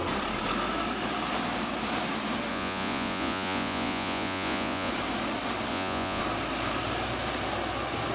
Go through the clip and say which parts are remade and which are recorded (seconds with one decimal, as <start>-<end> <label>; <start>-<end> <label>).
0.0-2.5 recorded; 2.5-4.9 remade; 4.9-5.7 recorded; 5.7-6.2 remade; 6.2-8.1 recorded